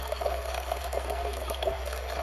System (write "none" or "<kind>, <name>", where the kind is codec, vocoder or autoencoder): codec, SNAC